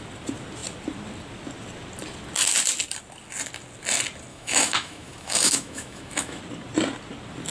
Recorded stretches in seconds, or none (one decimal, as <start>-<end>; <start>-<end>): 0.0-4.3; 6.4-7.5